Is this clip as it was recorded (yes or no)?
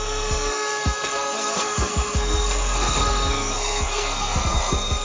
no